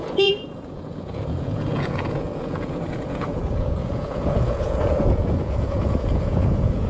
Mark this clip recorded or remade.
remade